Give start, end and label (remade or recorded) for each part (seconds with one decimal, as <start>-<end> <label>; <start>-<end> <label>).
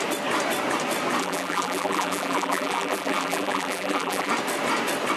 0.0-1.2 recorded; 1.2-4.3 remade; 4.3-5.2 recorded